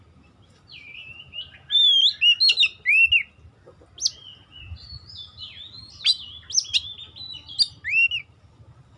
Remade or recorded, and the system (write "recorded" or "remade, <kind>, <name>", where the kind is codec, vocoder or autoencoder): recorded